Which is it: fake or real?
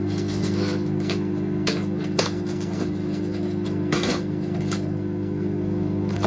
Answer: fake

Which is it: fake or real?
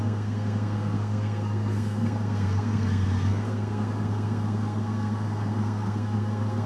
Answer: fake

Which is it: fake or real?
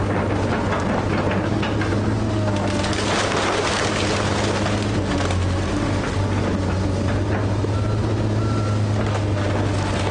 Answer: real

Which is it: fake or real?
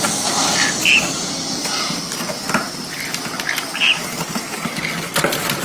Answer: real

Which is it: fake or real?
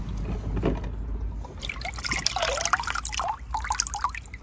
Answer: real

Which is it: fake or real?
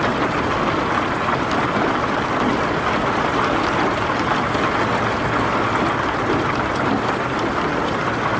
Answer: real